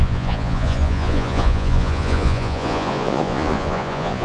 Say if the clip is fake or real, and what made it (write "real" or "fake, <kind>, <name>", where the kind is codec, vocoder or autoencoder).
fake, vocoder, Vocos